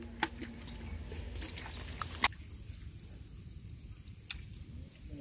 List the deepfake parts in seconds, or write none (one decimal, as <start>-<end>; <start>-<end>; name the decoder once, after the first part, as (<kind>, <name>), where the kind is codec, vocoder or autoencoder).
none